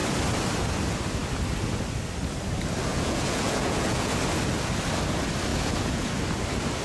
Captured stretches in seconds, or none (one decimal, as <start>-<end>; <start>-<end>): 0.0-2.9; 4.1-5.5; 6.2-6.8